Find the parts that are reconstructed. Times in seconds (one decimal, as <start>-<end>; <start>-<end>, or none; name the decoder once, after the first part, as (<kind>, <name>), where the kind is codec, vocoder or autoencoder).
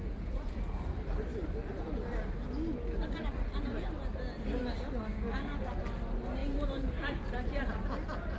0.0-0.6 (vocoder, Vocos); 6.4-7.2